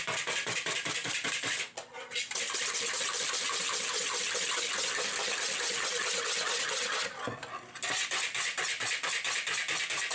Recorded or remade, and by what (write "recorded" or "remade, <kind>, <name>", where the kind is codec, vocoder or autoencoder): recorded